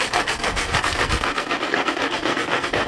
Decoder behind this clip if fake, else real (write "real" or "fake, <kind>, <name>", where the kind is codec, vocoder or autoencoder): fake, codec, SNAC